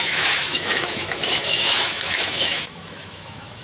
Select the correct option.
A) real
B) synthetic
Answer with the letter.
B